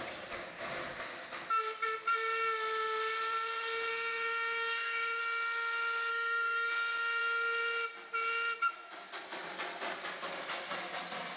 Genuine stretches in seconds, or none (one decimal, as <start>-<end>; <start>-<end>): 0.0-3.9; 5.2-6.1; 6.7-11.4